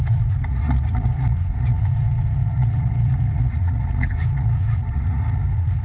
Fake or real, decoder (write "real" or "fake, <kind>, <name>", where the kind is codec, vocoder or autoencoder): fake, vocoder, Vocos